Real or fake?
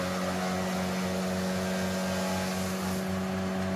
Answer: real